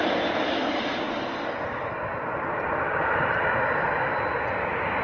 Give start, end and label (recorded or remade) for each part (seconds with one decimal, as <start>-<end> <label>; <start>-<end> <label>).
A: 0.0-0.4 recorded; 0.4-3.4 remade; 3.4-5.0 recorded